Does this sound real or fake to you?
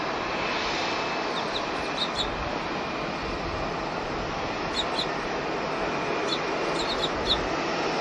real